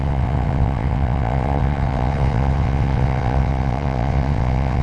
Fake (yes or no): yes